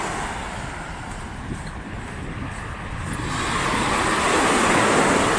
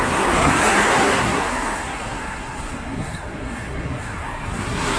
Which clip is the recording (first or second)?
first